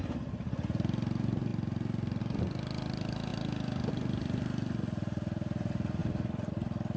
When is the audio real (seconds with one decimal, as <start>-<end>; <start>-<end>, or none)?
0.0-7.0